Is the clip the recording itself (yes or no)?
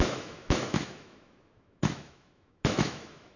no